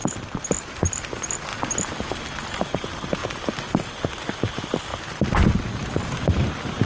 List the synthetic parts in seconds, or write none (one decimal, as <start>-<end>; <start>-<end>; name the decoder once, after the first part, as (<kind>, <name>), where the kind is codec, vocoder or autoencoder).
0.0-1.1 (vocoder, BigVGAN v2); 3.2-4.0